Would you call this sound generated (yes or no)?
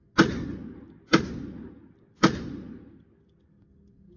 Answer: no